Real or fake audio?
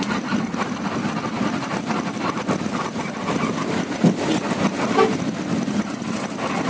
real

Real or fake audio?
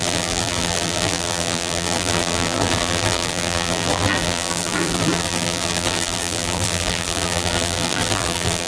fake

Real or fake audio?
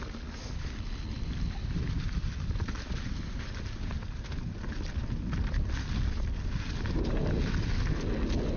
real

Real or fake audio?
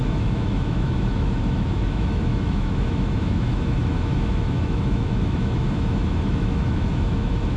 fake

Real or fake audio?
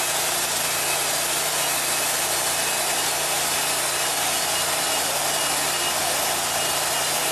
real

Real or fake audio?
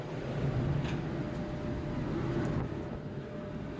real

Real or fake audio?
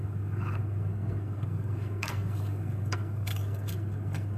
fake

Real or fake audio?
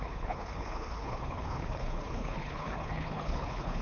fake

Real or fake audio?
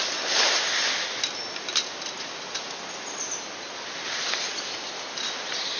real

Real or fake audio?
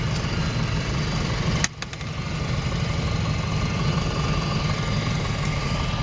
real